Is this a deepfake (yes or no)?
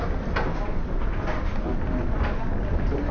no